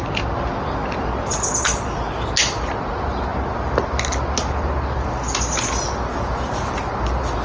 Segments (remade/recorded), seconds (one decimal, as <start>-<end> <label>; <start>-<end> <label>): 0.0-7.4 recorded